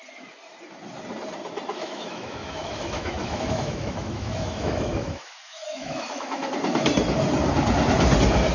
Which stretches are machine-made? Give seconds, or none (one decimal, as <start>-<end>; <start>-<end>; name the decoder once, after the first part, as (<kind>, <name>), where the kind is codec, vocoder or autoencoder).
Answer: 1.7-6.5 (autoencoder, DAC-VAE)

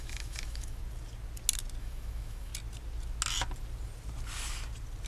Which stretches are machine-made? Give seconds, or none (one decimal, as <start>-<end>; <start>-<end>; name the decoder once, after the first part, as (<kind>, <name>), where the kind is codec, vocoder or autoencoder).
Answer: 0.0-0.8 (autoencoder, DAC-VAE); 1.8-2.5

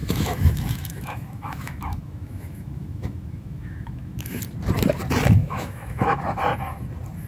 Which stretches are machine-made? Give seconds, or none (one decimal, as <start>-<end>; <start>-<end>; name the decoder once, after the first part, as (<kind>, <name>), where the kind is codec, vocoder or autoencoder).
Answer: 0.0-4.4 (autoencoder, DAC-VAE); 5.4-6.2

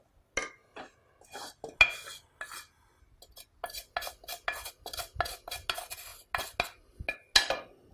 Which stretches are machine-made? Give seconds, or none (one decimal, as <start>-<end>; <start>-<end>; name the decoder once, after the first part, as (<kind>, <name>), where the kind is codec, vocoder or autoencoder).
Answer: none

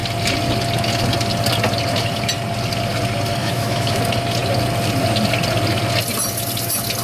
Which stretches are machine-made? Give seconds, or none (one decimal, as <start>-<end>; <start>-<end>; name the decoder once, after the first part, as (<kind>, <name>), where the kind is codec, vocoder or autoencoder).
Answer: 3.4-4.0 (autoencoder, DAC-VAE)

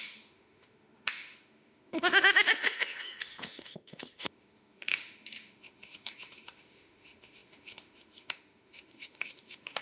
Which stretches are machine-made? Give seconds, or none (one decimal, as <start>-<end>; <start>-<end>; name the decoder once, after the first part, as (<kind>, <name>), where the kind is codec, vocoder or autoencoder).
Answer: 0.0-9.8 (autoencoder, DAC-VAE)

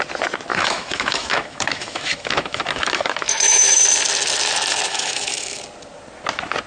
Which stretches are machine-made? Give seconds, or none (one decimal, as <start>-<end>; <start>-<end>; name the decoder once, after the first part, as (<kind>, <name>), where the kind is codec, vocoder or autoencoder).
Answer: 0.5-3.8 (autoencoder, DAC-VAE); 4.9-5.6

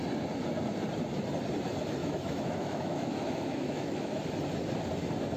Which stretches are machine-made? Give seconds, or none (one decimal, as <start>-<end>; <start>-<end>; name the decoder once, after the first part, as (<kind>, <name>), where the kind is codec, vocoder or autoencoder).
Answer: 2.0-4.2 (autoencoder, DAC-VAE)